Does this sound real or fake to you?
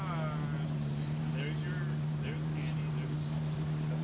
real